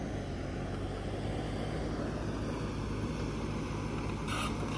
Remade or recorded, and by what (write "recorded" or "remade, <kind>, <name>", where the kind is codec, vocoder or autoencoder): recorded